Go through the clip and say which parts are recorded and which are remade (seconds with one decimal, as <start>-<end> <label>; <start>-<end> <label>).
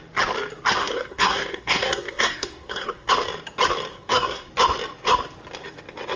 0.0-0.8 recorded; 0.8-3.1 remade; 3.1-3.9 recorded; 3.9-4.5 remade; 4.5-6.2 recorded